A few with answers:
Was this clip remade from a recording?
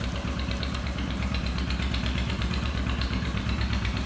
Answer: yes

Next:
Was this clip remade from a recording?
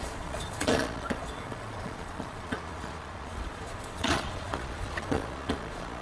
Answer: yes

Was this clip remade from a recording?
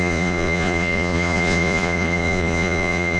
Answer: yes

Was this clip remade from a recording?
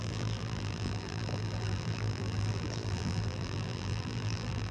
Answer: yes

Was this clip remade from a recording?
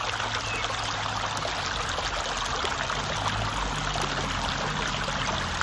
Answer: no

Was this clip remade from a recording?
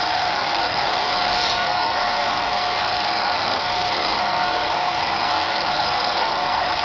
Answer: yes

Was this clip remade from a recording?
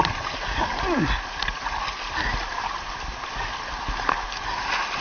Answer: no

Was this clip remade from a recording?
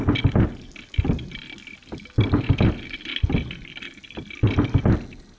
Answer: no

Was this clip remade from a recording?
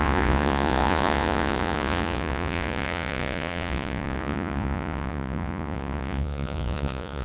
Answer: yes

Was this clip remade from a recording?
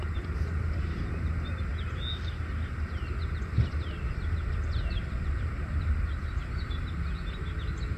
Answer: no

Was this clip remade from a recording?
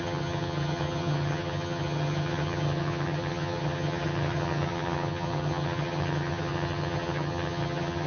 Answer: yes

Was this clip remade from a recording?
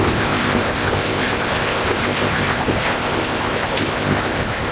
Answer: yes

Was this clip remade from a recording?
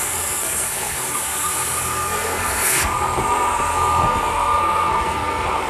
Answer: yes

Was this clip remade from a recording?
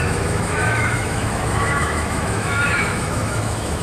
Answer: yes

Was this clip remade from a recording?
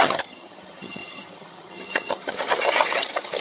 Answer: yes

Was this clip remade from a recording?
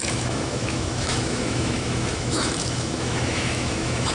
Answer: yes